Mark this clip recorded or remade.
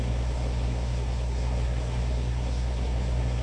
remade